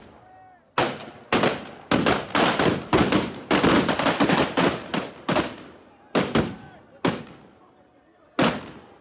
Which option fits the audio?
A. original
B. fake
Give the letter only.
A